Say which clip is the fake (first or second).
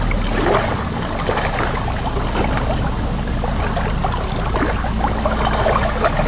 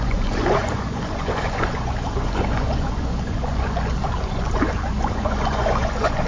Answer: second